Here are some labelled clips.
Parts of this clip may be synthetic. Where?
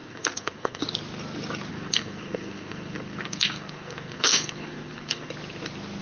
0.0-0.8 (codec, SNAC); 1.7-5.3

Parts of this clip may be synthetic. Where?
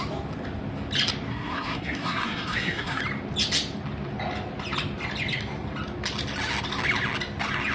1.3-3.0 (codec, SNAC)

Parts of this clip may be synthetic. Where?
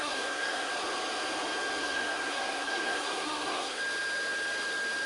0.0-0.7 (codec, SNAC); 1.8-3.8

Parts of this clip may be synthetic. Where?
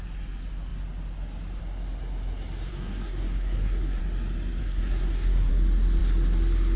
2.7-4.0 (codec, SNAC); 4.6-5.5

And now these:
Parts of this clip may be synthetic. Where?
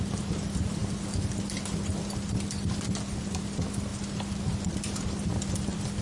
none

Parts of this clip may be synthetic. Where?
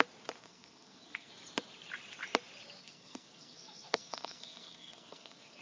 0.4-1.3 (codec, SNAC); 2.8-5.6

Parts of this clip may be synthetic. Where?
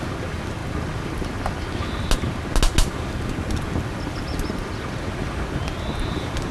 none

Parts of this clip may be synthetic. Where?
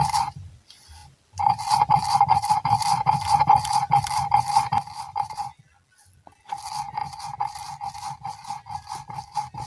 none